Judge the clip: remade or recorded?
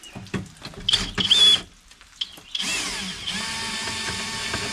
recorded